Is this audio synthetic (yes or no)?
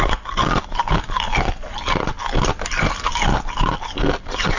no